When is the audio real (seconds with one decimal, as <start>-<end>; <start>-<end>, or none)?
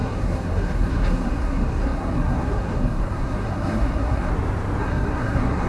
4.3-4.8